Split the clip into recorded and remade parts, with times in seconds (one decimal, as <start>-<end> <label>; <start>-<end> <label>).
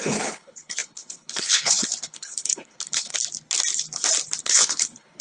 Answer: 0.0-3.1 remade; 3.1-4.4 recorded; 4.4-5.2 remade